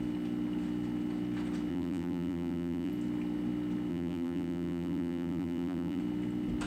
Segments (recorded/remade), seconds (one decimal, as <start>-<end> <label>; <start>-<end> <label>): 0.0-1.7 recorded; 1.7-2.9 remade; 2.9-3.9 recorded; 3.9-6.0 remade; 6.0-6.7 recorded